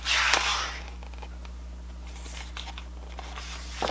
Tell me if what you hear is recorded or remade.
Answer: recorded